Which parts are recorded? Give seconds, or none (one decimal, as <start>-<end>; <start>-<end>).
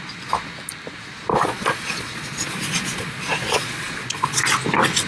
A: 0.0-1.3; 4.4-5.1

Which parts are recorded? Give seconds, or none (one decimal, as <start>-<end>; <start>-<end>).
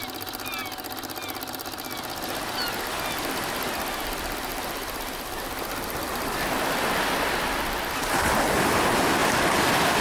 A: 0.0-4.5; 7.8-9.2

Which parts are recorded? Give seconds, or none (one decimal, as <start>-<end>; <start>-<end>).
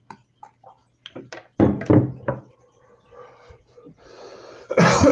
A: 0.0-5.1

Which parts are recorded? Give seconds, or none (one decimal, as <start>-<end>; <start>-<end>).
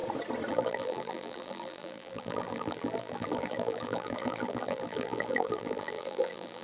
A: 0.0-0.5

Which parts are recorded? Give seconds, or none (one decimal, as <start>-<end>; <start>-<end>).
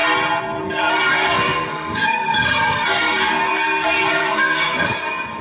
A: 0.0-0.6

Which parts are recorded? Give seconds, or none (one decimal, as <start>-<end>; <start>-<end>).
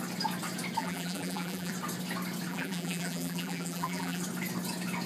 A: 0.0-0.8; 1.7-2.5; 4.2-5.1